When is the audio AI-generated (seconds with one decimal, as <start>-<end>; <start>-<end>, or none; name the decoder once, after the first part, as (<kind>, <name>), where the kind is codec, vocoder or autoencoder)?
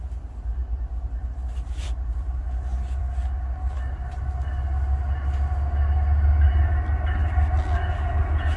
0.6-2.4 (vocoder, BigVGAN v2)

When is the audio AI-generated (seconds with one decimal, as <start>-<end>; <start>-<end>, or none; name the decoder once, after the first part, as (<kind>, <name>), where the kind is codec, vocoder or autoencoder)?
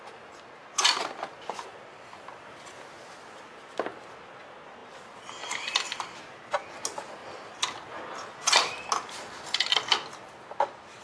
none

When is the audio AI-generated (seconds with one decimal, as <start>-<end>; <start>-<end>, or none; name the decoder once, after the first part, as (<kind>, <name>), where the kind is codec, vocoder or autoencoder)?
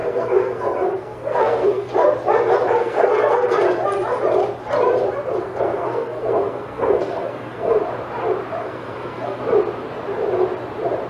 0.0-1.9 (codec, SNAC); 2.8-3.6; 5.4-7.8; 8.6-9.4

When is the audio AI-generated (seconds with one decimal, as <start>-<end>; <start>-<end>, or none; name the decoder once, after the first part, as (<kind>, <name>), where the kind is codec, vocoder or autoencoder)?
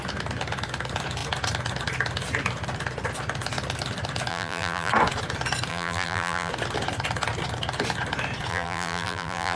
4.3-4.9 (vocoder, BigVGAN v2); 5.7-6.5; 8.5-9.6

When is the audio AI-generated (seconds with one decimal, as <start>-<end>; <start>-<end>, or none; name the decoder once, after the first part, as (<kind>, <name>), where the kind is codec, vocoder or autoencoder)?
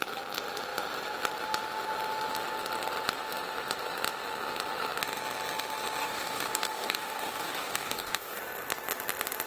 6.0-8.4 (codec, DAC)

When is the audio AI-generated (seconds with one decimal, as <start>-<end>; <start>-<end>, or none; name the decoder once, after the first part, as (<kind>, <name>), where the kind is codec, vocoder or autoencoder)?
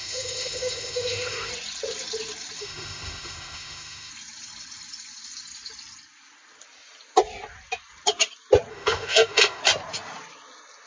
0.0-1.5 (autoencoder, DAC-VAE); 2.6-4.1; 8.7-9.6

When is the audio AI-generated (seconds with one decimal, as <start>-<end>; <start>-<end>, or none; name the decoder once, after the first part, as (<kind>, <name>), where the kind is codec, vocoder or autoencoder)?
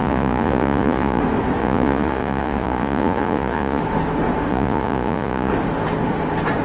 0.0-1.2 (vocoder, Vocos); 1.6-3.8; 4.5-5.5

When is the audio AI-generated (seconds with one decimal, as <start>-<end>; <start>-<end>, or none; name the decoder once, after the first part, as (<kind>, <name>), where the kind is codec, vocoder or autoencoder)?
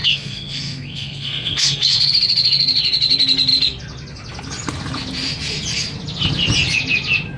0.0-2.1 (codec, SNAC)